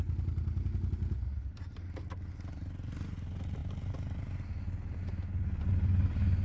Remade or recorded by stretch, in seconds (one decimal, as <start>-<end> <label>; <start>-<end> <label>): 0.0-6.4 recorded